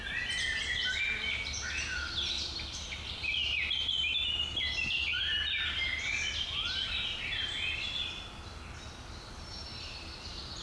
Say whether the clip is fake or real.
real